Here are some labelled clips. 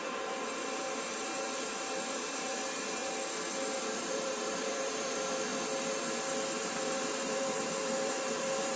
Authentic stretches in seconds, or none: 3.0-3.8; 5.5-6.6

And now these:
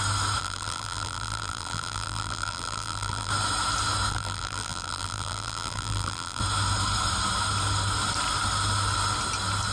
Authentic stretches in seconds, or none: 0.0-0.4; 3.3-4.1; 6.4-9.7